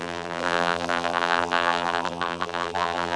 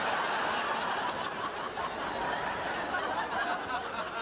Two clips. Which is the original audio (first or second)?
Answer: second